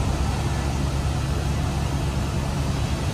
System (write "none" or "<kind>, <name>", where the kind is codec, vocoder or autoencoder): none